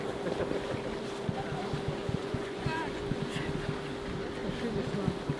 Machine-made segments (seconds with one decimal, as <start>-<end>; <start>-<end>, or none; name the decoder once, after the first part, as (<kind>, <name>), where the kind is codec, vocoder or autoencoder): 2.0-3.2 (vocoder, Vocos)